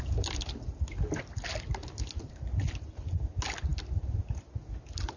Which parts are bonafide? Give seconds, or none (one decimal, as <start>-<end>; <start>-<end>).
0.0-5.2